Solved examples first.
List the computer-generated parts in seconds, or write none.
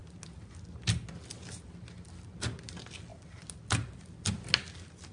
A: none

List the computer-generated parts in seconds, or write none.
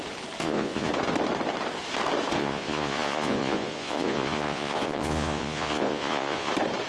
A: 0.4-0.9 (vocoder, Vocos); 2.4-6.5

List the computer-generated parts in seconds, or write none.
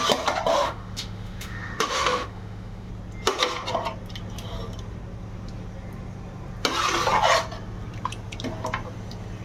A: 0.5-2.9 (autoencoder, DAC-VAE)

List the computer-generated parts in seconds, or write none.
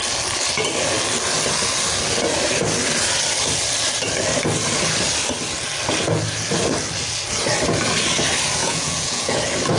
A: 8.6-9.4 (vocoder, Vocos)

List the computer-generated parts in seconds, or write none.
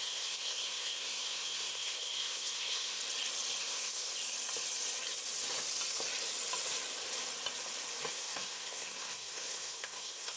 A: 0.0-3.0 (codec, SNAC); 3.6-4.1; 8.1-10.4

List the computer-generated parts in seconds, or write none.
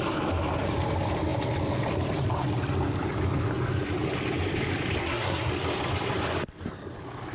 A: 5.0-5.5 (codec, SNAC)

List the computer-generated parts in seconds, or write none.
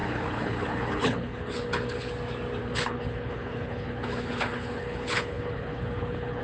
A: 0.0-2.1 (codec, HILCodec); 2.6-6.4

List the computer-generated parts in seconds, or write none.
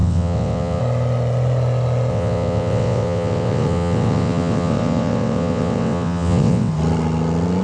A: 0.0-0.8 (vocoder, WaveNeXt); 2.1-6.7